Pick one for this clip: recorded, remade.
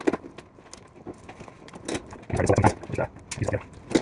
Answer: recorded